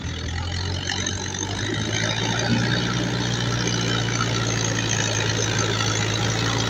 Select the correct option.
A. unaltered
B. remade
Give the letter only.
A